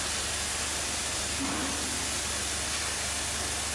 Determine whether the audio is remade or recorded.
recorded